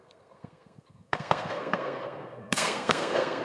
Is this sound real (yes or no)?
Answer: no